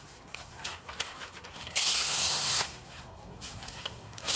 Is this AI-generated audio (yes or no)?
yes